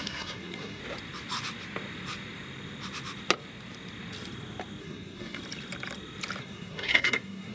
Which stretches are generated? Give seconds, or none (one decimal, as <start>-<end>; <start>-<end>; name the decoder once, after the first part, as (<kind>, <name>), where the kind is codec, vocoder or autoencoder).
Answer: 0.0-0.8 (codec, SNAC); 4.8-5.4; 6.4-7.5